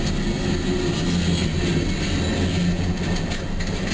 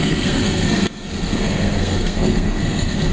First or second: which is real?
first